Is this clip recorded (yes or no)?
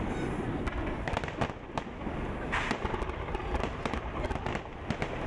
yes